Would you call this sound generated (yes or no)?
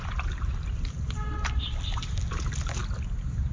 no